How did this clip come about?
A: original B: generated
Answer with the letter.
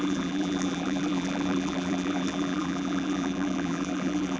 B